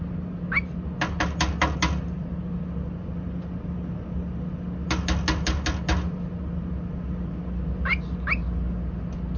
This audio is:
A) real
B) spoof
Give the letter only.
A